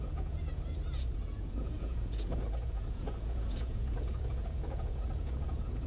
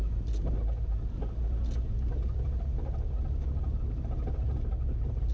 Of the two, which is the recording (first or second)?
second